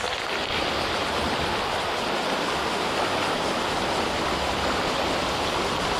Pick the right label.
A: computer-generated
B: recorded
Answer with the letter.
B